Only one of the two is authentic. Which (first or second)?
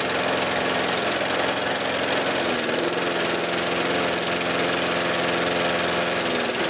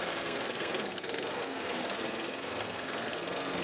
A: first